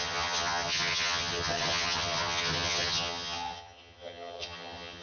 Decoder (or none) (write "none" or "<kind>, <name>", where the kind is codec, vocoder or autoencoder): vocoder, HiFi-GAN